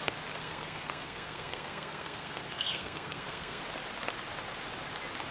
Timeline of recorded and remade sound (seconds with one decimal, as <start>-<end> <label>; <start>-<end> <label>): 0.0-0.4 recorded; 0.4-3.6 remade; 3.6-5.3 recorded